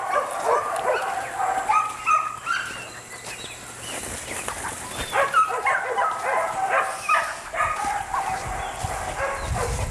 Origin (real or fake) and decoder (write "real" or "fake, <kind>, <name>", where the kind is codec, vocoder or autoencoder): real